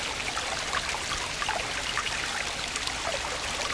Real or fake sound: real